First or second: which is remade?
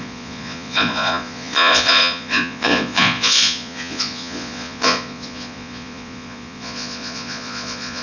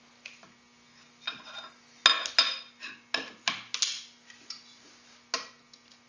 first